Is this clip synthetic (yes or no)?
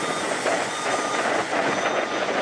yes